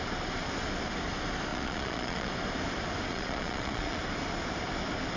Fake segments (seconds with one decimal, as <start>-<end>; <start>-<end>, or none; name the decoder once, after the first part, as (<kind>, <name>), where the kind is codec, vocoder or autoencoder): 1.5-2.3 (vocoder, Vocos); 3.1-4.0